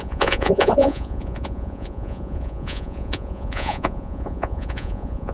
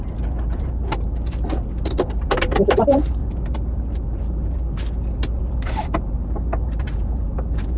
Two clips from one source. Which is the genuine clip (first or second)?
second